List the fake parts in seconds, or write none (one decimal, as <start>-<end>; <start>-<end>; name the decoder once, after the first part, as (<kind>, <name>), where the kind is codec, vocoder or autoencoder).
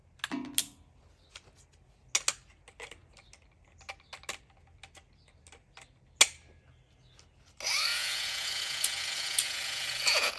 7.9-10.4 (vocoder, Vocos)